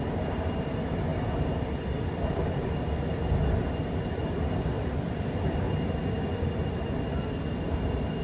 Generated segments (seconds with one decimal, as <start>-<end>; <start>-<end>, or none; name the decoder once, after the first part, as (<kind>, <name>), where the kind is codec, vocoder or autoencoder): none